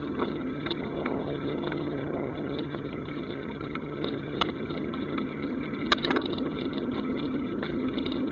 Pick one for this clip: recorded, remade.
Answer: remade